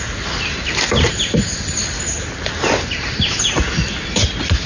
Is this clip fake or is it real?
real